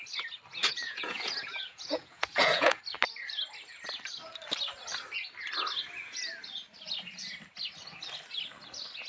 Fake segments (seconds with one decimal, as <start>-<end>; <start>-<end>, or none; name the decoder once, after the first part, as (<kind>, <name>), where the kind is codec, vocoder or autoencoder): 0.6-2.8 (vocoder, Vocos)